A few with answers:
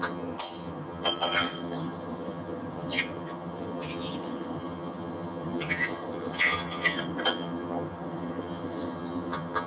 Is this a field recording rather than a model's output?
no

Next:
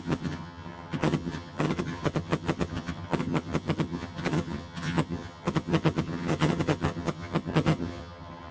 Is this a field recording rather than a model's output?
no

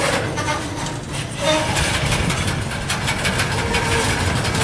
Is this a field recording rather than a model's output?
yes